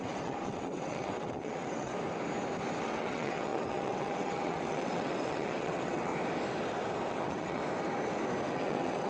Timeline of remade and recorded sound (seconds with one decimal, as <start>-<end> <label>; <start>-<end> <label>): 0.0-1.9 remade; 1.9-2.8 recorded; 2.8-6.1 remade; 6.1-7.1 recorded; 7.1-7.6 remade; 7.6-8.5 recorded; 8.5-9.1 remade